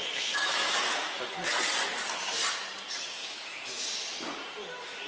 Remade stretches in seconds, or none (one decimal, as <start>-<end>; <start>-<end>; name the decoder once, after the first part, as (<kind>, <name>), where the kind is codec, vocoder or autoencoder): 0.0-1.5 (autoencoder, DAC-VAE); 3.2-3.8